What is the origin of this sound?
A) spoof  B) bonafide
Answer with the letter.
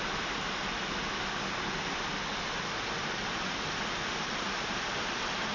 B